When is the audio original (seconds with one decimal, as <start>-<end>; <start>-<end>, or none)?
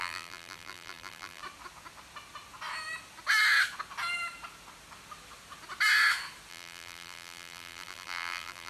1.4-6.5